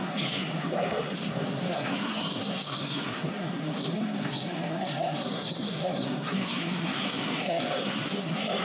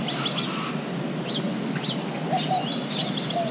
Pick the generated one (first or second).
first